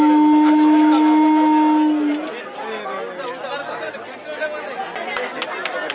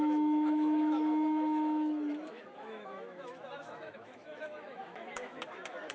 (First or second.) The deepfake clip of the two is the second